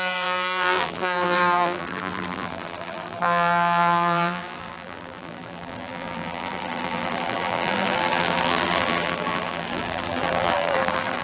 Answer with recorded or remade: remade